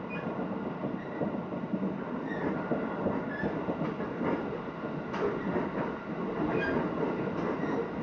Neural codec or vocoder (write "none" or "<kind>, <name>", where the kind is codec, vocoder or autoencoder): none